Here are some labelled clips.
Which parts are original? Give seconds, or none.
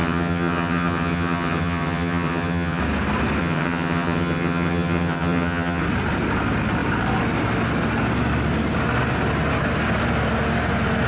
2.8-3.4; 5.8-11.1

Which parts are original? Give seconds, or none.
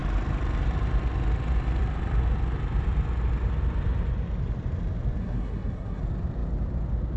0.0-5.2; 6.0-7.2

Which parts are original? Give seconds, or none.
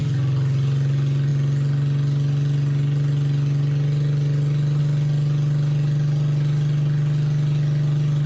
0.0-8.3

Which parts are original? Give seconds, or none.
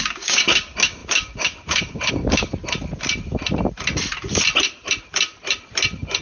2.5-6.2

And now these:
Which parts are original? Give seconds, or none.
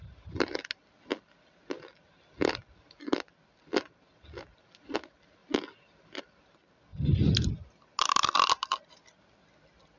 0.0-10.0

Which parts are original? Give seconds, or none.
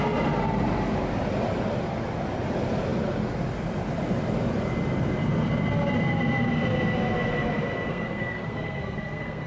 0.0-7.9